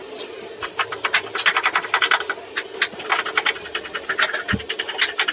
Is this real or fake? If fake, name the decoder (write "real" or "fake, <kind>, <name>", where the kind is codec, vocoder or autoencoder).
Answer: real